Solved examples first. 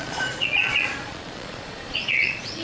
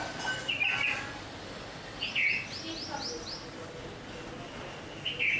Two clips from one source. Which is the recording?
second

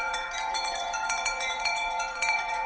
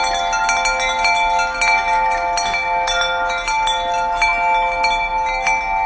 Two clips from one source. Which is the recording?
second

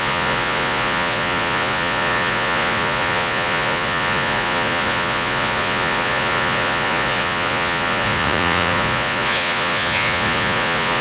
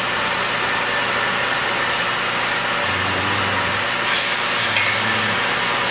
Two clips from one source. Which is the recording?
second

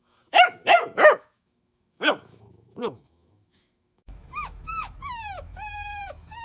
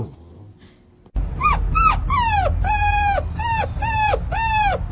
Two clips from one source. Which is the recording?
second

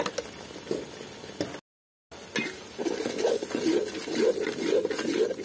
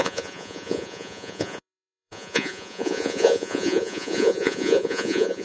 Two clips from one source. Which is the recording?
first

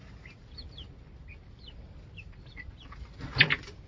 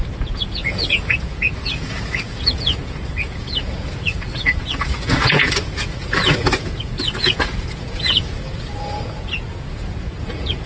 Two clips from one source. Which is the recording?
first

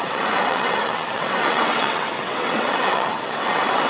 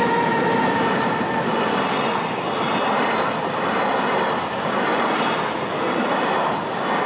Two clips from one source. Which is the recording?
second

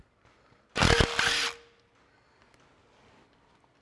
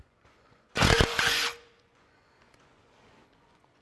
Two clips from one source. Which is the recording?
first